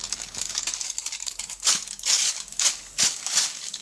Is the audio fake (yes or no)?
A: yes